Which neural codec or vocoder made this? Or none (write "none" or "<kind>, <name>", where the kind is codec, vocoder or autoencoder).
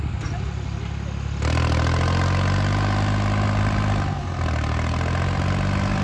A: none